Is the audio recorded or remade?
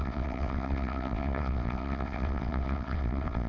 remade